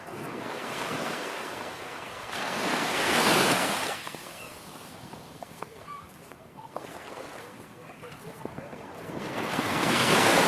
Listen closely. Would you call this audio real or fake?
fake